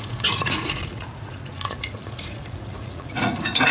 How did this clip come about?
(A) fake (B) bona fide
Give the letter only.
A